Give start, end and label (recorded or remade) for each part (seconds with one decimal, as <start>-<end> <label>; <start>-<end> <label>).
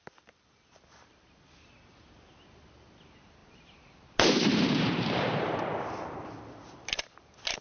0.0-3.4 recorded; 3.4-6.3 remade; 6.3-7.6 recorded